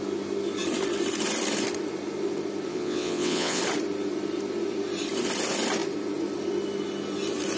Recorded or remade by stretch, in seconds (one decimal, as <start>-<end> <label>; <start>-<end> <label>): 0.0-2.7 recorded; 2.7-3.6 remade; 3.6-7.6 recorded